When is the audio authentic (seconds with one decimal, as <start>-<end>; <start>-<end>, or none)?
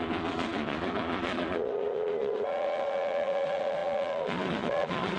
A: none